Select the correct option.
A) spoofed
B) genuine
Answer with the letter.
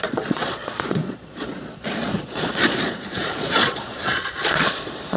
A